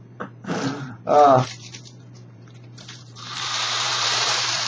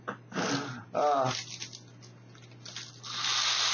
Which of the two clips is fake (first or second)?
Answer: first